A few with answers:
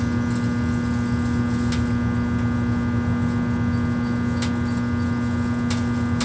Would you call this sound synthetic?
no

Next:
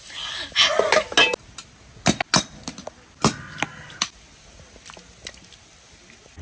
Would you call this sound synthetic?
no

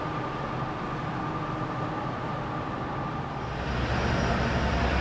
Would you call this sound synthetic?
no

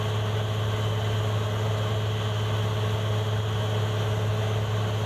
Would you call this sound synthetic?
no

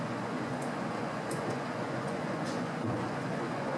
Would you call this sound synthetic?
yes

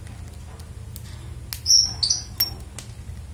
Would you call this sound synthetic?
no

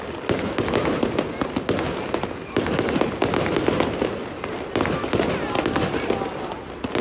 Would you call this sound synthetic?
no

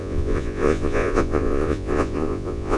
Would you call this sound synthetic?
yes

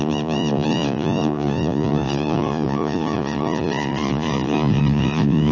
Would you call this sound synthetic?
yes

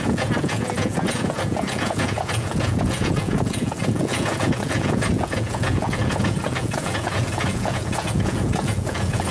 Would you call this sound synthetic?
yes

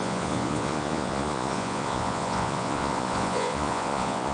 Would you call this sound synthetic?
yes